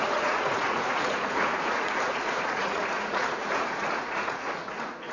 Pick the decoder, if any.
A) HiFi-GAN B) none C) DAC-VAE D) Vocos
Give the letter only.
D